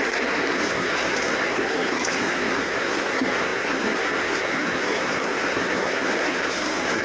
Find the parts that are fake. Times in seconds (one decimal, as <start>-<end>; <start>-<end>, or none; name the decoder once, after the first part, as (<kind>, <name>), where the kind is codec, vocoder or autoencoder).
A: 0.0-7.0 (codec, SNAC)